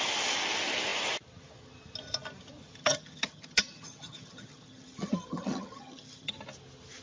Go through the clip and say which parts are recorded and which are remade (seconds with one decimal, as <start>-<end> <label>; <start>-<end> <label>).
0.0-2.8 recorded; 2.8-6.3 remade; 6.3-7.0 recorded